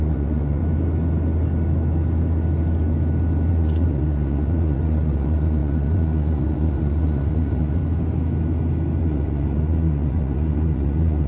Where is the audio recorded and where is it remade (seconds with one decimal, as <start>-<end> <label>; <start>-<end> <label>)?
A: 0.0-0.6 remade; 0.6-3.5 recorded; 3.5-7.8 remade; 7.8-9.0 recorded; 9.0-11.3 remade